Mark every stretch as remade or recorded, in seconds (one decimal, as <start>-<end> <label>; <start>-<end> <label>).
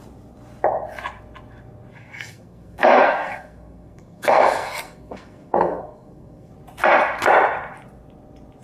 0.0-1.9 recorded; 1.9-6.5 remade; 6.5-8.6 recorded